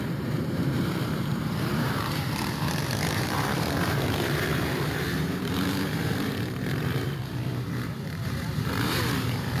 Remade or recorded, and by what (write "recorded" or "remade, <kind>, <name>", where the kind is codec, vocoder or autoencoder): remade, vocoder, BigVGAN v2